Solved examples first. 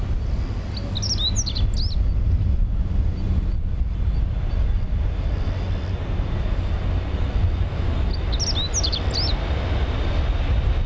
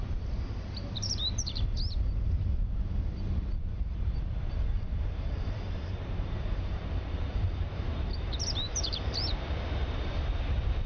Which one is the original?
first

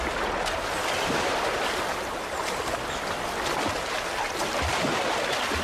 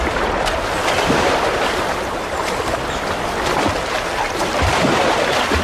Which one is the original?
first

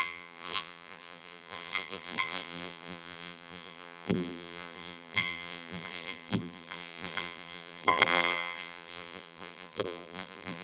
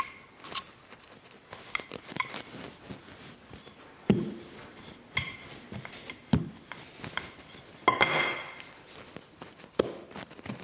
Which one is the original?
second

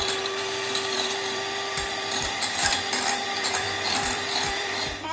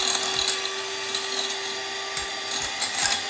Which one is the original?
second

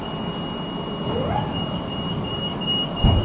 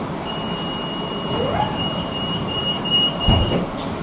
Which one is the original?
first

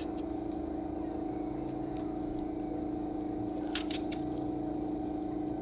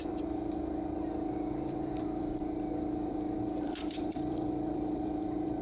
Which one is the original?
first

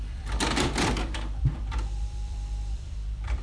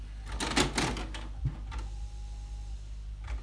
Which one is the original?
second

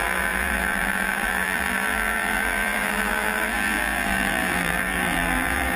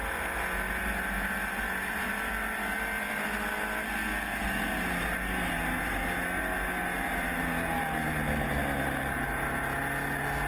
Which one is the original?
second